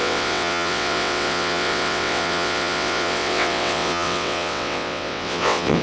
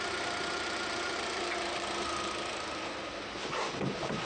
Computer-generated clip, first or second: first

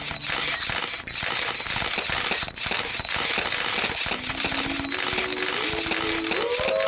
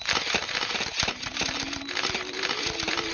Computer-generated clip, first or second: second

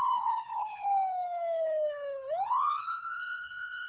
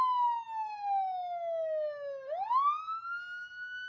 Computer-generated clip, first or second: first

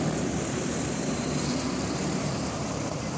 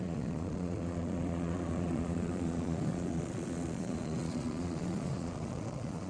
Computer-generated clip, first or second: second